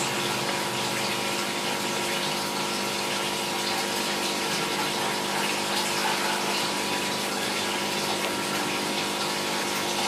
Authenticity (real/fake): real